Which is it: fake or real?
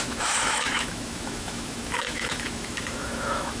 fake